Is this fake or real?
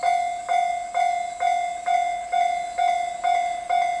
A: real